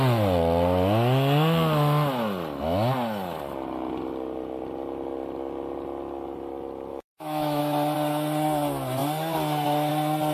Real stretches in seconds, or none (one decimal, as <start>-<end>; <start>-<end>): 0.0-6.9; 7.6-10.3